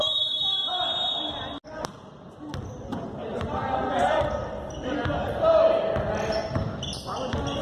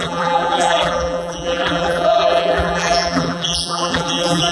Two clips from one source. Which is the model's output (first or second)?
second